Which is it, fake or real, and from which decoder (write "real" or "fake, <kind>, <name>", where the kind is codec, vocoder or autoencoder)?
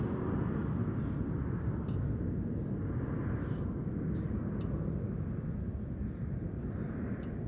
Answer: real